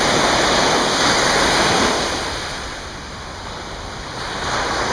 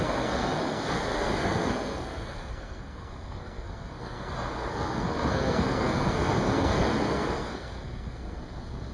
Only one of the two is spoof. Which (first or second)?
second